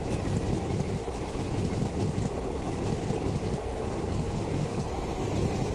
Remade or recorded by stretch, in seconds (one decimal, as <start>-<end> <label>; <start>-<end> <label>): 0.0-3.5 recorded; 3.5-5.3 remade; 5.3-5.7 recorded